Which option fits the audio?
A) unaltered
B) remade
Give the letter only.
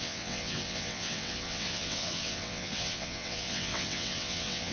B